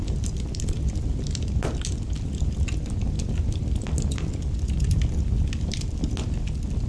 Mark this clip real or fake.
real